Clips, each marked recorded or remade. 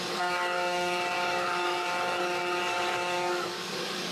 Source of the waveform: remade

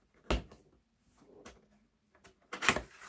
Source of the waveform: recorded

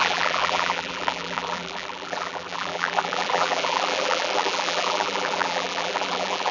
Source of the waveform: remade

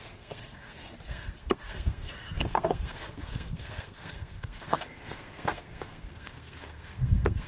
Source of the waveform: remade